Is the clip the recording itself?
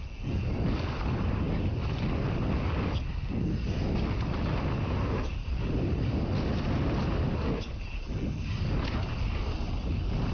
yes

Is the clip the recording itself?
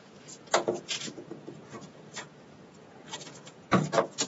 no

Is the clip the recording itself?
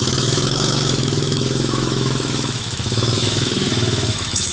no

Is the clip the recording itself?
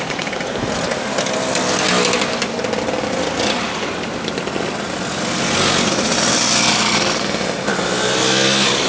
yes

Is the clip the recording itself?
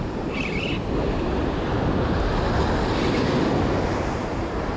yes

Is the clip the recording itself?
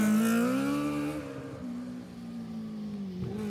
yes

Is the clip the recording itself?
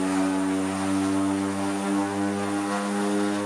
yes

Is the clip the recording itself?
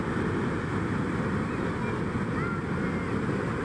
yes